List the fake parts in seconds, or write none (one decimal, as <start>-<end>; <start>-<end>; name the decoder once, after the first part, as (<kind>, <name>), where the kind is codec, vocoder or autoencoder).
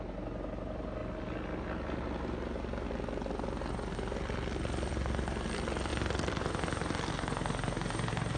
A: none